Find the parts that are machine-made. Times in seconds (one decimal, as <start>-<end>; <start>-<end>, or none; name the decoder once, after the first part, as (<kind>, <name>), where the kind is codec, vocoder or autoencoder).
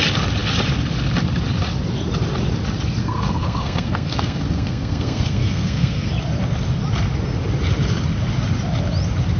3.0-6.1 (codec, SNAC)